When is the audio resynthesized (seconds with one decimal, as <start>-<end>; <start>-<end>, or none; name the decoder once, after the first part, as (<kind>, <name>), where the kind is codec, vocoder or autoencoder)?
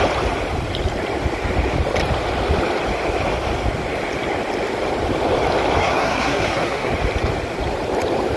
5.8-6.9 (codec, SNAC)